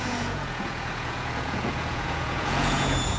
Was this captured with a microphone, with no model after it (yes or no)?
no